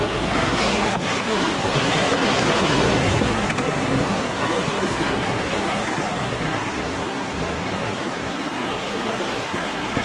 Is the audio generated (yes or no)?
yes